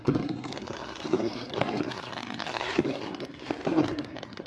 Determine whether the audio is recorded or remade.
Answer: remade